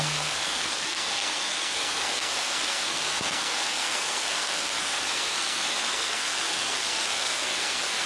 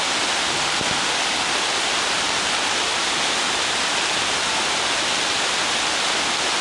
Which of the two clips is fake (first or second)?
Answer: first